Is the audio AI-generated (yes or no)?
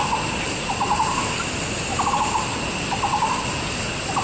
no